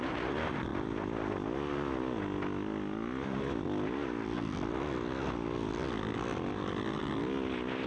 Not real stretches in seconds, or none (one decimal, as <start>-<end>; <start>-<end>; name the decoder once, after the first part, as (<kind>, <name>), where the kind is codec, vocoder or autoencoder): none